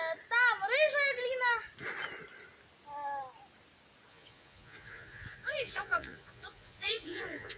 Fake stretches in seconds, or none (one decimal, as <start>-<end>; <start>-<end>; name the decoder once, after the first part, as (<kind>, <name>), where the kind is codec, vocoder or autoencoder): 4.1-7.6 (vocoder, Vocos)